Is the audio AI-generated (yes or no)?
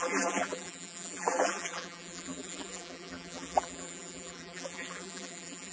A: yes